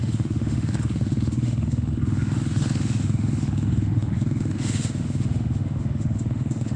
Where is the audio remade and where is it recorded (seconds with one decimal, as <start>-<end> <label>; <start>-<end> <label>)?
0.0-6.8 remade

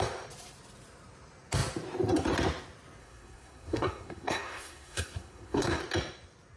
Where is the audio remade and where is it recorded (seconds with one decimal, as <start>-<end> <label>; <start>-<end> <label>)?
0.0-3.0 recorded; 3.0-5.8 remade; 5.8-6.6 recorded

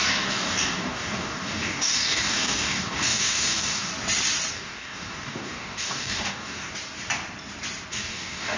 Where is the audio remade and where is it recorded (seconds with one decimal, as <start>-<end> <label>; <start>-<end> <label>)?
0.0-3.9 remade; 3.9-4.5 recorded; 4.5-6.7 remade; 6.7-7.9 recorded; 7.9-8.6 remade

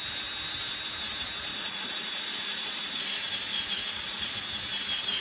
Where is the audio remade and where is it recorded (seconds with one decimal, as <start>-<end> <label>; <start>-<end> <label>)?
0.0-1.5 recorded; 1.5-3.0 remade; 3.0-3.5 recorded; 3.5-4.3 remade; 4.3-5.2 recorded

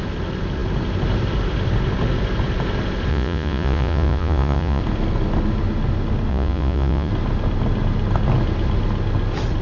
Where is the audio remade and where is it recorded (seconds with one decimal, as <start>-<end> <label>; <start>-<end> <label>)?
0.0-3.1 recorded; 3.1-4.8 remade; 4.8-6.3 recorded; 6.3-7.1 remade; 7.1-9.6 recorded

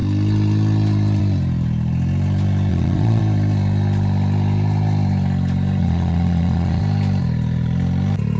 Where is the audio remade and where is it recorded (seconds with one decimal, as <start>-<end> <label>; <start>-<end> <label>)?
0.0-2.7 recorded; 2.7-3.2 remade; 3.2-5.8 recorded; 5.8-6.8 remade; 6.8-8.4 recorded